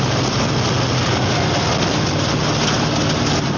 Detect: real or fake real